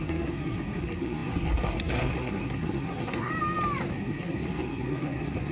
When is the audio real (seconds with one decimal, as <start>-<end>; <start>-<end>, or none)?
3.3-3.9

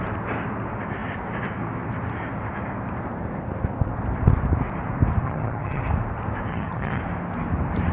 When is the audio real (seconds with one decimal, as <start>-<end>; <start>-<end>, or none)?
0.0-5.2; 5.8-6.5; 7.0-7.9

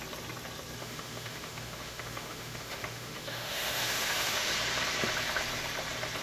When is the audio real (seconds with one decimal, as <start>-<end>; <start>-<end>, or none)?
0.0-0.8; 4.5-6.2

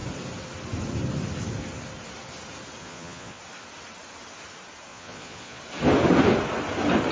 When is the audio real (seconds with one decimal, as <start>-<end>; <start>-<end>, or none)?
0.0-2.8; 3.4-4.9; 5.6-7.1

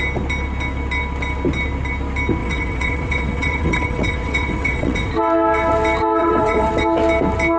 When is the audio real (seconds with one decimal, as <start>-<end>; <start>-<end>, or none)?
0.0-2.4; 5.1-6.2; 6.7-7.6

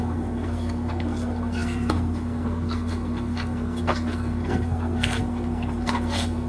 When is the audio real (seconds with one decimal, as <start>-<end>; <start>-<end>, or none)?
none

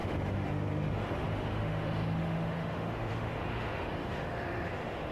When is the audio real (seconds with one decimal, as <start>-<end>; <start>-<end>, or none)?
none

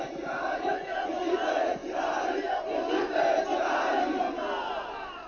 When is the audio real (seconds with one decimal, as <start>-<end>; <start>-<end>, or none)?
1.8-5.3